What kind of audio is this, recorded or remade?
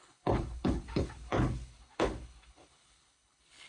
remade